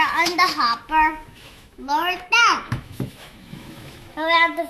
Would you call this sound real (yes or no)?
no